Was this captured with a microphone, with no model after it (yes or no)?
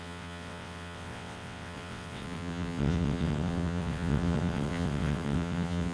no